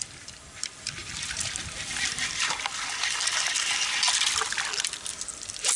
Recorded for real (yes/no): yes